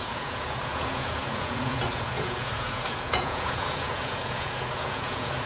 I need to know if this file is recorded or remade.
remade